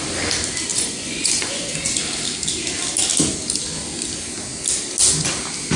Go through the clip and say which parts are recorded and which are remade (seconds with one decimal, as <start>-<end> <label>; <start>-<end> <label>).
0.0-0.7 recorded; 0.7-1.7 remade; 1.7-5.8 recorded